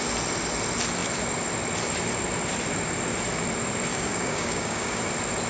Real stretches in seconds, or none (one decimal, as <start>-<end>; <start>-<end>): 0.0-3.9; 5.0-5.5